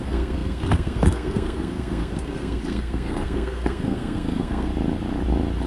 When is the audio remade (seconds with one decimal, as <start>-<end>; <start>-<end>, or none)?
0.0-4.7